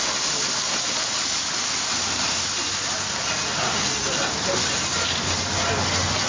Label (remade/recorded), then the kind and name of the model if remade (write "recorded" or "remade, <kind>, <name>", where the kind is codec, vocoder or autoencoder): recorded